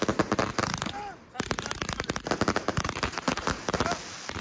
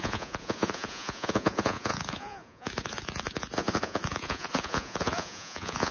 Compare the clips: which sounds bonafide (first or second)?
first